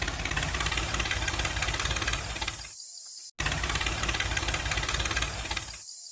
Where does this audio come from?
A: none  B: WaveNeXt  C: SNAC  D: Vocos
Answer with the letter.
A